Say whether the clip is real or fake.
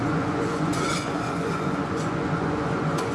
fake